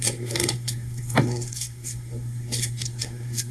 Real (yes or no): no